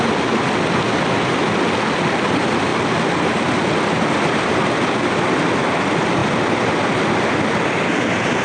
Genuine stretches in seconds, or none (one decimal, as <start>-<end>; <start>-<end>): 0.0-8.4

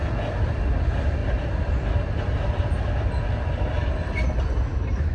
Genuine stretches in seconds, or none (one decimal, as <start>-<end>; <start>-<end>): 0.0-5.1

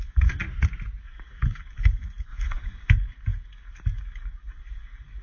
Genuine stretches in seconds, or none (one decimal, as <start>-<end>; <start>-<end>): 0.4-1.0

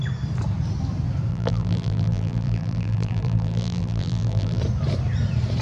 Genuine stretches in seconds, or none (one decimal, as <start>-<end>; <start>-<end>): 0.0-1.3; 4.6-5.6

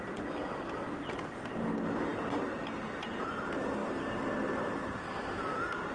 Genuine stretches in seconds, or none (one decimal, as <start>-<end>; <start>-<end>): 0.0-5.9